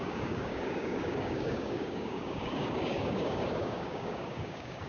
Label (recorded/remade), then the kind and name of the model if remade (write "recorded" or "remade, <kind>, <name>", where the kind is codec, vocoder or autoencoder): remade, codec, DAC